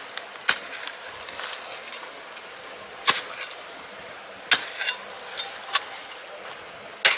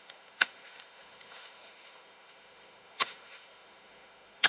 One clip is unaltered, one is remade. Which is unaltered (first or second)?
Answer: first